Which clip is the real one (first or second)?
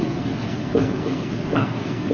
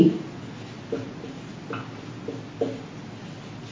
second